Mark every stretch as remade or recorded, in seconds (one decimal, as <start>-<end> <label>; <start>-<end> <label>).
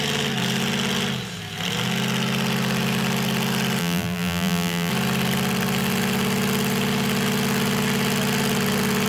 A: 0.0-3.8 recorded; 3.8-4.9 remade; 4.9-9.1 recorded